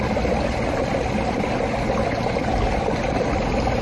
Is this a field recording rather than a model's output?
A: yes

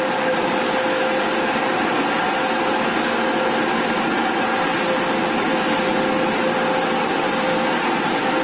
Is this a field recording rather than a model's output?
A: yes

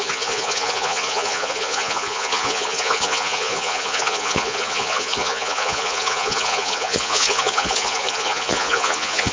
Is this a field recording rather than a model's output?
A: no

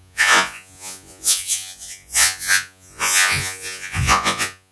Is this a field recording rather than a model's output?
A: no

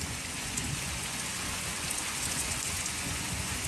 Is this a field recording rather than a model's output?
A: no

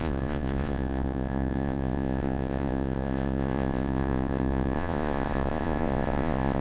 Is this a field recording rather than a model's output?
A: no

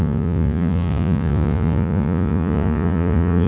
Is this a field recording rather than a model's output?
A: no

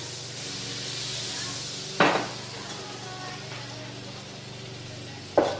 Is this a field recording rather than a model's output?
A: yes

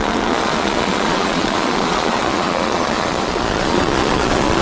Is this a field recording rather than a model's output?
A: no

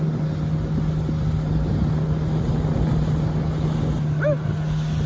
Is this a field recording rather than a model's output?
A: yes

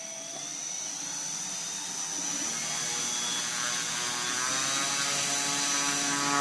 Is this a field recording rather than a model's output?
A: yes